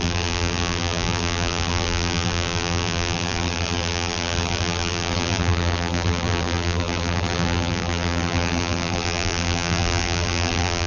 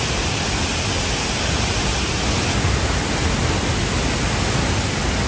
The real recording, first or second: second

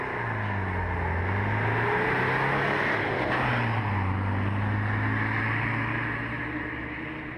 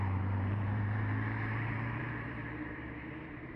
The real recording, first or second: first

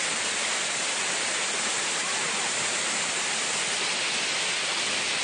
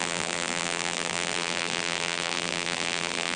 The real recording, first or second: first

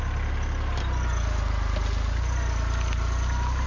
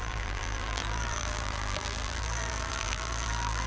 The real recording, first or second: first